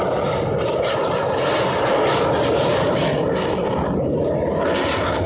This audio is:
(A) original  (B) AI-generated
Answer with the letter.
A